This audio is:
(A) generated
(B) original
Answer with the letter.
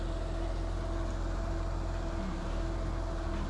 B